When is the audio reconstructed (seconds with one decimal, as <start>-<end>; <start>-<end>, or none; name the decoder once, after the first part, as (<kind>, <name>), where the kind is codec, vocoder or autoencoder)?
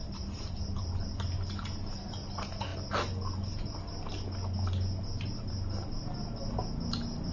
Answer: none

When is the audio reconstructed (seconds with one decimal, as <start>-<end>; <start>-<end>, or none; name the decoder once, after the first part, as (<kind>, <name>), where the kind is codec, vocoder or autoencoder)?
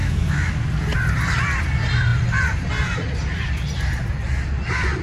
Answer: 0.0-0.5 (autoencoder, DAC-VAE)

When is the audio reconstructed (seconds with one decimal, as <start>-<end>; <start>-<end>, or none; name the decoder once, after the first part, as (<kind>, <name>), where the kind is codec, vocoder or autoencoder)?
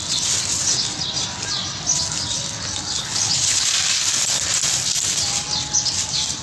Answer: 3.0-3.7 (codec, HILCodec)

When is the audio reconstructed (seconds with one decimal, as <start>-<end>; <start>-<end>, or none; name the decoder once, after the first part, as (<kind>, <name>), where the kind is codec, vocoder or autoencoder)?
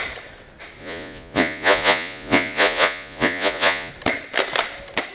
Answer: 0.8-3.9 (vocoder, Vocos)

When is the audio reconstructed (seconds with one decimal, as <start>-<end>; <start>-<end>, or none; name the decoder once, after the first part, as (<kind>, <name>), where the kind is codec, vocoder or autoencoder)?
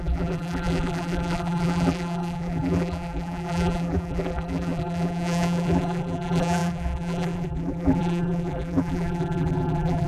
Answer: 0.0-10.1 (vocoder, BigVGAN v2)